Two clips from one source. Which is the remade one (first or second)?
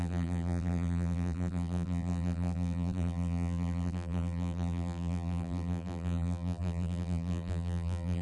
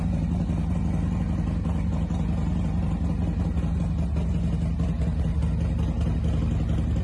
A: first